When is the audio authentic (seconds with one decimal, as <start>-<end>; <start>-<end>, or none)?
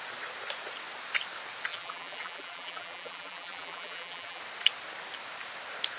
0.0-1.7; 4.4-6.0